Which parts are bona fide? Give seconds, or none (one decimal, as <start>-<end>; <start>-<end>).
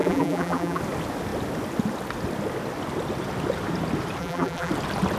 0.8-4.2; 4.7-5.2